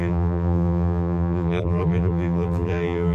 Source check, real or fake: fake